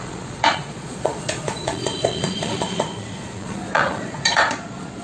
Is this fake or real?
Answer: fake